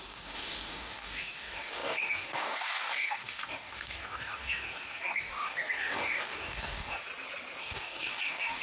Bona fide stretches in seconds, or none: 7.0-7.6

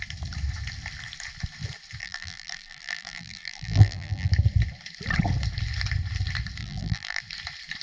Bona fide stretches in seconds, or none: 0.0-2.0; 4.3-6.6; 7.2-7.8